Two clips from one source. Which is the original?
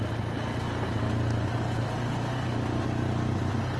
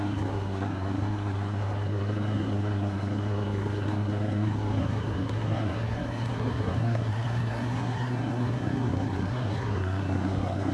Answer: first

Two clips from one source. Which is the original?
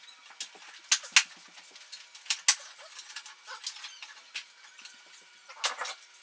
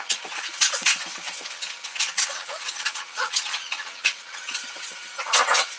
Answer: first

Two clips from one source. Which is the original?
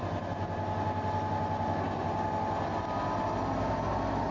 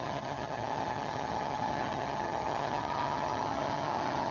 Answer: first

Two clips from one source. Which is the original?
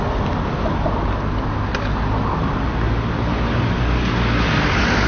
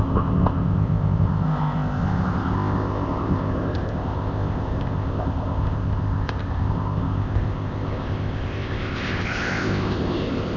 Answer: first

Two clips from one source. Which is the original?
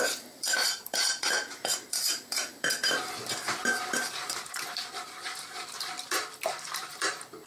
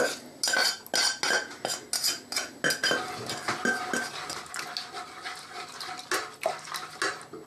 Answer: second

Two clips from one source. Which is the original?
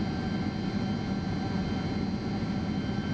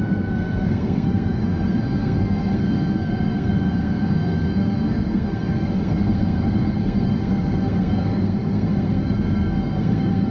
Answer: first